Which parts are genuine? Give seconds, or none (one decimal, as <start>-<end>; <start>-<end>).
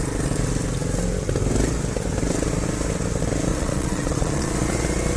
0.0-3.5; 4.5-5.2